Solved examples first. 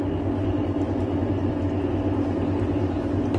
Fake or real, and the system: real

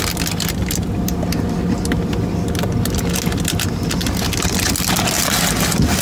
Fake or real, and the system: real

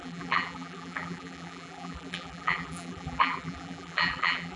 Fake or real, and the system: fake, vocoder, BigVGAN v2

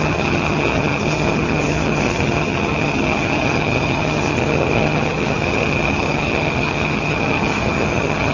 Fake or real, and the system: fake, vocoder, HiFi-GAN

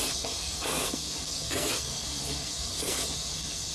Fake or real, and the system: fake, codec, SNAC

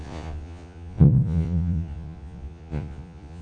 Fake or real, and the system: fake, vocoder, Vocos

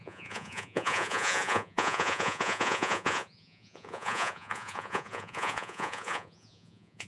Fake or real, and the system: fake, vocoder, Vocos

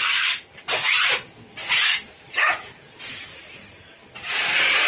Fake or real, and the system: fake, vocoder, BigVGAN v2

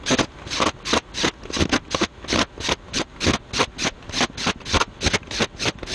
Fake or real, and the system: real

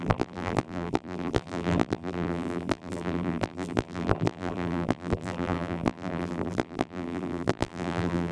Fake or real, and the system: fake, vocoder, BigVGAN v2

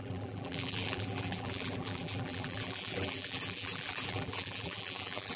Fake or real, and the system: fake, vocoder, BigVGAN v2